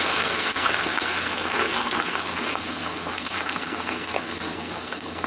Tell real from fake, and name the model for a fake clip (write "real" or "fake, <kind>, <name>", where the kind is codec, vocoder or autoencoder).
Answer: fake, codec, SNAC